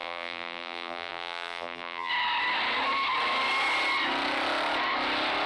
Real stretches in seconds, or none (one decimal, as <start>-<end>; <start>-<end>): 2.1-5.5